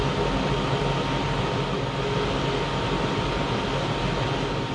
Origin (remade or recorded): recorded